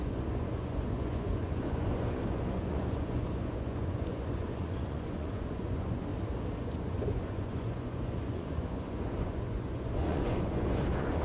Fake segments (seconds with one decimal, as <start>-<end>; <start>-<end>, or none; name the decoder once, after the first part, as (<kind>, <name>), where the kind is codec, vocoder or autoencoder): 0.0-6.1 (vocoder, Vocos); 6.6-11.2

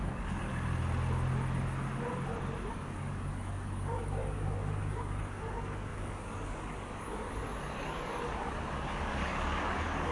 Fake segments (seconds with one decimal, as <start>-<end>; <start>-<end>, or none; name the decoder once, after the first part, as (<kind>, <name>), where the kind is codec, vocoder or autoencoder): 0.0-0.5 (codec, DAC); 2.7-10.1

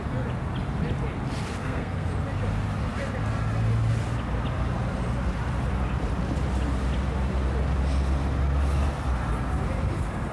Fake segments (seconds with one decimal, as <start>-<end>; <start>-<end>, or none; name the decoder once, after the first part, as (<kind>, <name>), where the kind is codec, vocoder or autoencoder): 1.6-2.1 (codec, SNAC)

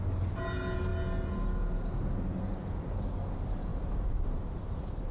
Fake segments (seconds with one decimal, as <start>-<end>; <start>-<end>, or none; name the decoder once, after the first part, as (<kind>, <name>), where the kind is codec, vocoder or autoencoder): none

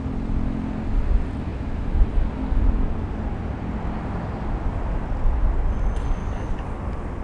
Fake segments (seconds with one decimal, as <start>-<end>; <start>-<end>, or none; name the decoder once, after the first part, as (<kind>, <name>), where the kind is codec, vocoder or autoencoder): 6.2-6.8 (codec, DAC)

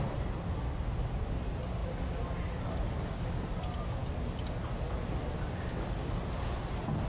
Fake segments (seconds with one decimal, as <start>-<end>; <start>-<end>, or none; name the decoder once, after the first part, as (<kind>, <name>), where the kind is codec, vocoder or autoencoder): none